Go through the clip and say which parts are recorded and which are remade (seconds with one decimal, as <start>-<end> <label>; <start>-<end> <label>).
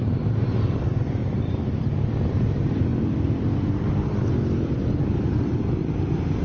0.0-1.2 recorded; 1.2-2.1 remade; 2.1-2.9 recorded; 2.9-4.1 remade; 4.1-6.4 recorded